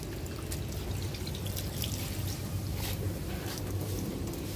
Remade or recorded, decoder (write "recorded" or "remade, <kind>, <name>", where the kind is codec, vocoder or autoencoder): recorded